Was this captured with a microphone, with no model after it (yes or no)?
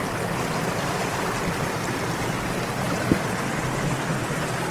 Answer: yes